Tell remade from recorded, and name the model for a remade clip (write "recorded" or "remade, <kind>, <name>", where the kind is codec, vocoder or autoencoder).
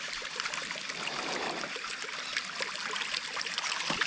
recorded